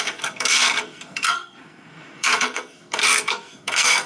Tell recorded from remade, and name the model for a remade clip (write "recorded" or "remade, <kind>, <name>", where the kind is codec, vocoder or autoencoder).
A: remade, codec, SNAC